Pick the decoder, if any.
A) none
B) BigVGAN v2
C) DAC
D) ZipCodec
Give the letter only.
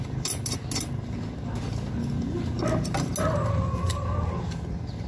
A